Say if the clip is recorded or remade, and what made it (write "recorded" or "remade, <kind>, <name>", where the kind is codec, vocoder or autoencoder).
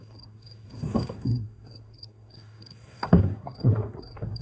remade, codec, SNAC